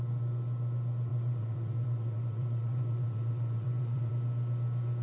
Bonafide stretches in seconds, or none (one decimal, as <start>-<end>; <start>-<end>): 0.0-1.1; 4.1-5.0